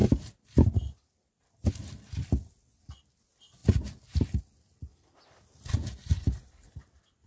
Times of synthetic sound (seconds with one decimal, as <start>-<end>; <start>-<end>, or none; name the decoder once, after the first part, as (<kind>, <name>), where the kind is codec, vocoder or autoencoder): none